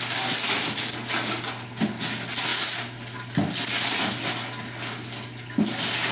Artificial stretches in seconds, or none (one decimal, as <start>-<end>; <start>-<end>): none